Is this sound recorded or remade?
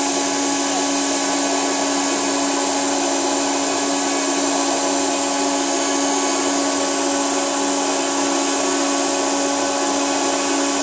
recorded